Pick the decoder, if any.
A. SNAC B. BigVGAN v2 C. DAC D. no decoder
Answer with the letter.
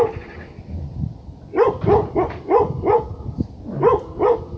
D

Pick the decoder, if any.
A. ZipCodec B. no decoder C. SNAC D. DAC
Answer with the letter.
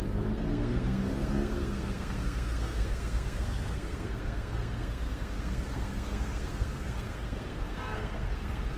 C